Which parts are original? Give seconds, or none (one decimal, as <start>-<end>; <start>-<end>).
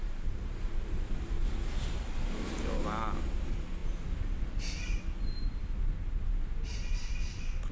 0.0-7.7